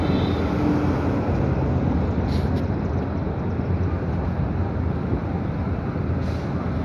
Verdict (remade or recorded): recorded